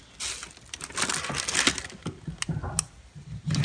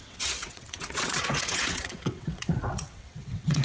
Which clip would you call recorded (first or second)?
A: first